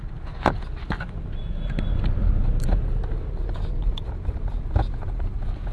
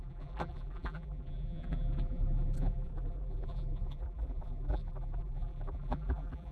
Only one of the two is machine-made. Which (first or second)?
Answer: second